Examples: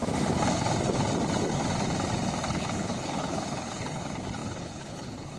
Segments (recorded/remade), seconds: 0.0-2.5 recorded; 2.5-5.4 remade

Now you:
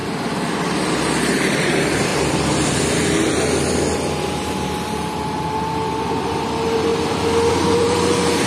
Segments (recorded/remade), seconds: 0.0-1.2 recorded; 1.2-2.1 remade; 2.1-6.1 recorded; 6.1-6.9 remade; 6.9-7.5 recorded; 7.5-8.5 remade

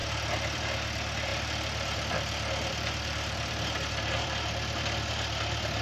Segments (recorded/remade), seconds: 0.0-0.6 remade; 0.6-1.3 recorded; 1.3-4.8 remade; 4.8-5.8 recorded

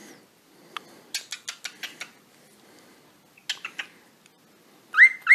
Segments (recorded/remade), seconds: 0.0-5.3 recorded